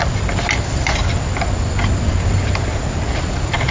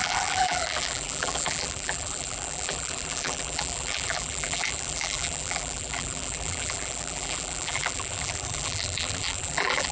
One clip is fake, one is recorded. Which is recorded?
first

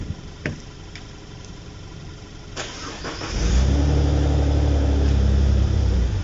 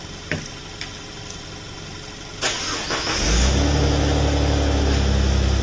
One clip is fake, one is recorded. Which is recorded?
second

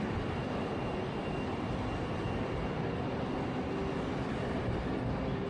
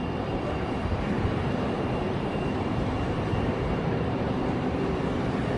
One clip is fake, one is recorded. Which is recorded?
first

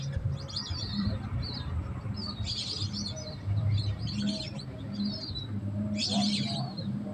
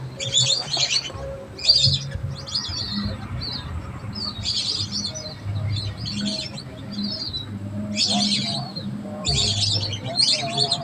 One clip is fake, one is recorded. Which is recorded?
second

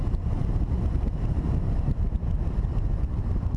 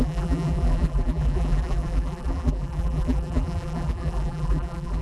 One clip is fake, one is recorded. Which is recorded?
first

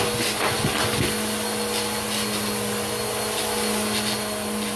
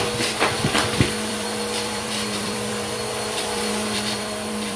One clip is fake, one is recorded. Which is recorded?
first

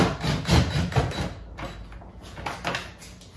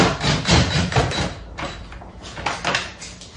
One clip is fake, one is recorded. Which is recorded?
first